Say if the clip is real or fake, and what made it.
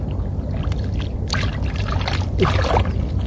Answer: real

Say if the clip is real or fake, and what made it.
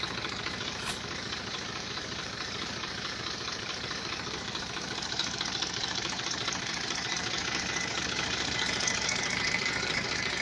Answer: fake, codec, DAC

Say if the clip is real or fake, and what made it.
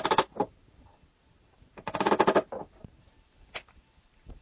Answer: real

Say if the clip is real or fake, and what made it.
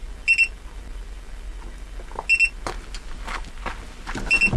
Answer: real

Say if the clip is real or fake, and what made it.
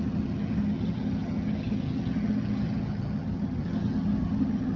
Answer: fake, vocoder, HiFi-GAN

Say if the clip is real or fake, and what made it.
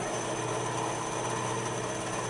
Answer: real